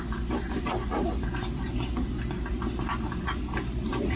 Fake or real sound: real